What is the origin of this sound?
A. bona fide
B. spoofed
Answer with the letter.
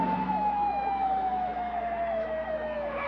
B